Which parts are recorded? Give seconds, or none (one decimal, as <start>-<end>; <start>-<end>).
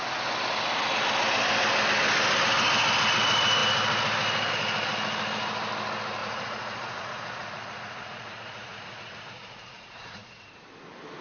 0.0-6.2; 10.5-11.2